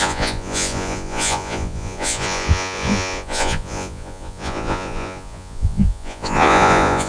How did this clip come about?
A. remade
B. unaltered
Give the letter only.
A